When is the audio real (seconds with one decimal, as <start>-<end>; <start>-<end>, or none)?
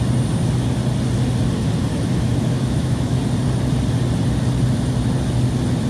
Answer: 0.0-1.9; 3.2-5.9